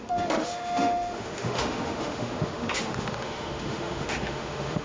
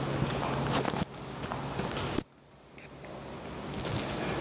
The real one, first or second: second